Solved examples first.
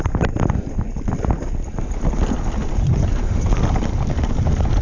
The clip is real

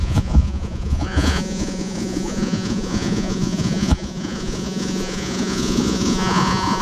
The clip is fake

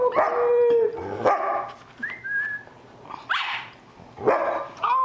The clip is real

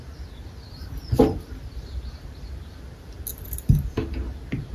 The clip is real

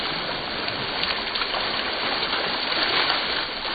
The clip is real